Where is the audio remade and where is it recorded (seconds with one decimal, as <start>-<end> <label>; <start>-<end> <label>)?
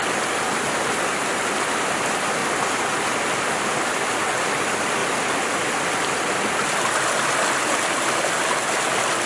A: 0.0-9.3 recorded